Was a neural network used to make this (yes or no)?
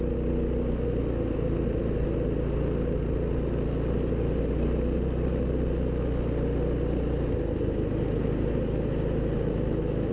no